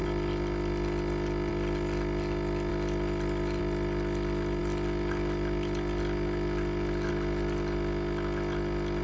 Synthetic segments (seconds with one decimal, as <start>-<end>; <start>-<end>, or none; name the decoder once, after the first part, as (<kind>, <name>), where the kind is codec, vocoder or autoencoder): none